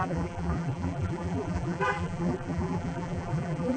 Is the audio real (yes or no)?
no